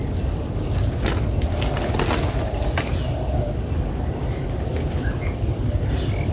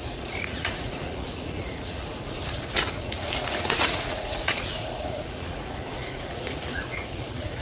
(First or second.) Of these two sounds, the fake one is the second